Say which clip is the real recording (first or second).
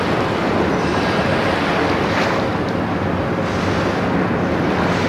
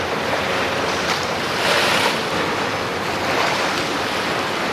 first